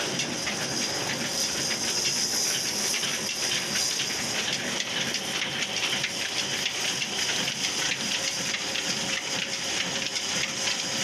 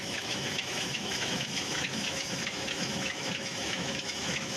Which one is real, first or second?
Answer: first